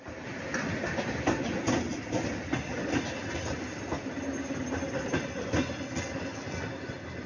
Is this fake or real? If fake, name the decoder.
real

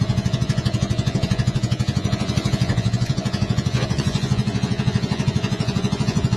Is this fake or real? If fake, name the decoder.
fake, vocoder, Vocos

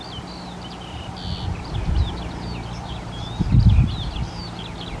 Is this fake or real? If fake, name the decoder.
real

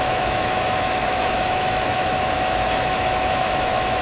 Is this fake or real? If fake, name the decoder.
fake, autoencoder, DAC-VAE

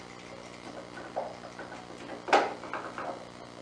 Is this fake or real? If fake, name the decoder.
real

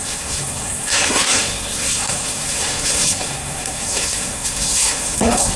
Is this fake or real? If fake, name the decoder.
fake, codec, SNAC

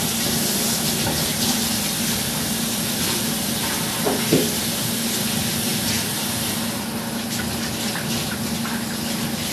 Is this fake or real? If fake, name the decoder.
real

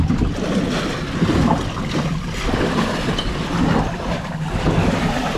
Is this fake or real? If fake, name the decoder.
real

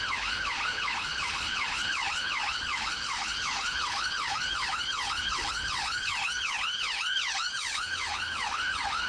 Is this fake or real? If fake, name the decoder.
fake, codec, HILCodec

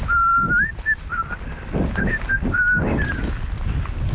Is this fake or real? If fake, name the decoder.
real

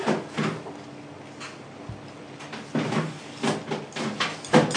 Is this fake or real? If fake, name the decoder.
real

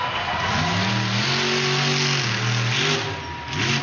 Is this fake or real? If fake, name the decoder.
real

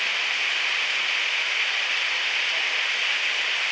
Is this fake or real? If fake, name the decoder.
real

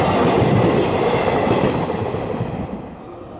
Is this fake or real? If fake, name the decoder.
real